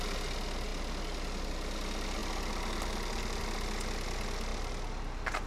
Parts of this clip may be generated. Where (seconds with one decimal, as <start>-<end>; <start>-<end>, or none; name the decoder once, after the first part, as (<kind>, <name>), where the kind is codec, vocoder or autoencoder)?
none